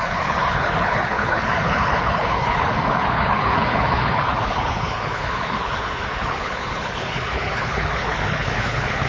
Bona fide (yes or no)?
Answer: no